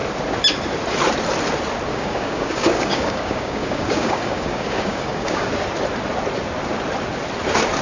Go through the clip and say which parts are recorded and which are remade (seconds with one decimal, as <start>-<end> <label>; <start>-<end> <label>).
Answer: 0.0-1.9 recorded; 1.9-5.5 remade; 5.5-7.8 recorded

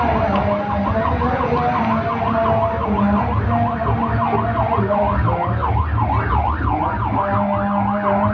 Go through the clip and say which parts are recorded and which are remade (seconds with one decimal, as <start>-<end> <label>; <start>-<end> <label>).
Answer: 0.0-8.3 recorded

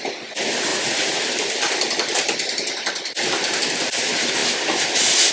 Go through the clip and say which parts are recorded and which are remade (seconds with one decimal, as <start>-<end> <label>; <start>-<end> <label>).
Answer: 0.0-0.7 recorded; 0.7-1.2 remade; 1.2-5.3 recorded